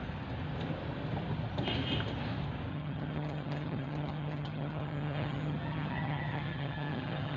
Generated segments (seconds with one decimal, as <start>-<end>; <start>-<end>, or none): 2.7-7.4